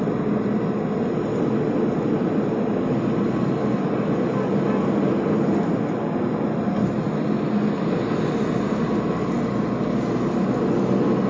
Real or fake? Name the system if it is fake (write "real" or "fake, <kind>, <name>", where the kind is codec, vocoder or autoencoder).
real